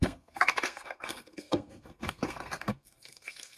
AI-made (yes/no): yes